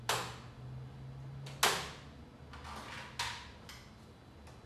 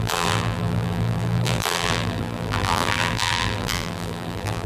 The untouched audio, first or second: first